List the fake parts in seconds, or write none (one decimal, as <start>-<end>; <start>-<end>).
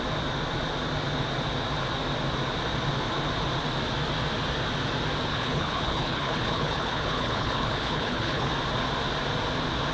5.3-8.5